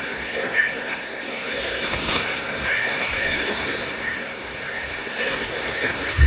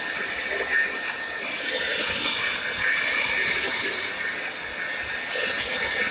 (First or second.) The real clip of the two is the second